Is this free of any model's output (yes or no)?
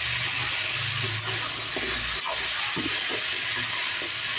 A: yes